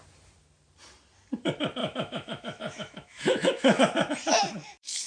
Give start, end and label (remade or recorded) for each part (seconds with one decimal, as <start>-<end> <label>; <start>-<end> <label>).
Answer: 0.0-1.8 recorded; 1.8-4.1 remade; 4.1-4.6 recorded; 4.6-5.1 remade